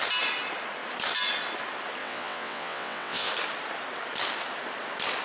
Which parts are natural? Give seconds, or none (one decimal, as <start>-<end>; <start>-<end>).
0.0-2.0; 3.3-5.2